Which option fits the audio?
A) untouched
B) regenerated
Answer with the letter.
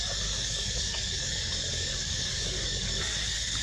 B